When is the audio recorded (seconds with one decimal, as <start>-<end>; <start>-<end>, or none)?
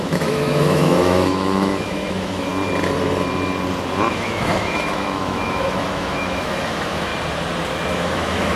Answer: 2.5-4.1; 7.1-7.9